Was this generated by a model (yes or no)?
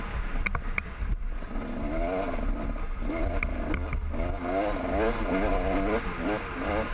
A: no